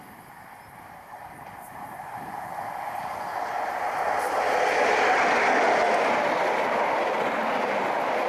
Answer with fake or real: real